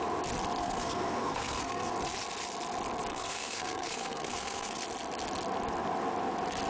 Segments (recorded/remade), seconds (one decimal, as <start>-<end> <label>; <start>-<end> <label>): 0.0-0.6 recorded; 0.6-1.9 remade; 1.9-3.1 recorded; 3.1-4.8 remade; 4.8-6.7 recorded